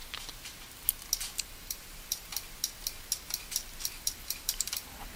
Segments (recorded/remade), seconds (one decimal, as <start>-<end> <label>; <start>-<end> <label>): 0.0-1.3 recorded; 1.3-2.3 remade; 2.3-3.9 recorded; 3.9-5.2 remade